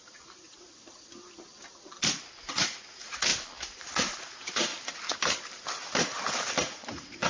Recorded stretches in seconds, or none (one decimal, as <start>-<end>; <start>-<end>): 0.7-2.5; 3.3-4.2; 4.7-6.6